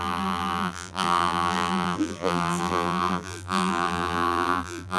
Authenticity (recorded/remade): remade